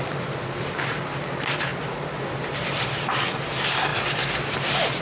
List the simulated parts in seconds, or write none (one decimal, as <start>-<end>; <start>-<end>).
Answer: 0.0-5.0